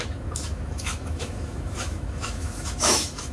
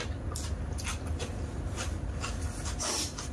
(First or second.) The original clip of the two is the second